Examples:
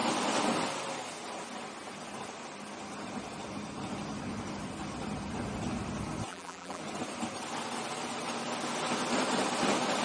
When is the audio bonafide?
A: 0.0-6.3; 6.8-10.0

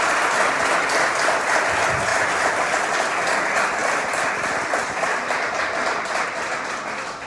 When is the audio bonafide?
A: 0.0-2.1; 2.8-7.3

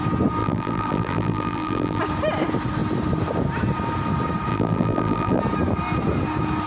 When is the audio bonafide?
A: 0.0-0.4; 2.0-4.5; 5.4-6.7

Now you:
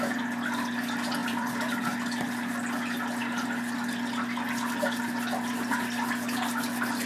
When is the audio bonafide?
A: 0.0-1.2; 1.8-7.1

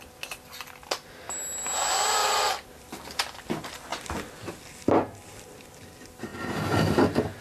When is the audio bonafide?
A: 0.0-2.2; 3.4-7.4

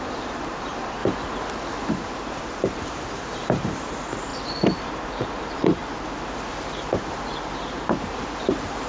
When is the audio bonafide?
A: 1.0-1.9; 4.3-4.8; 5.8-6.5